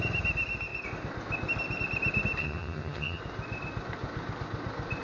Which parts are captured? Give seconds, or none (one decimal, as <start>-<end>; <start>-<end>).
0.0-2.4; 3.2-5.0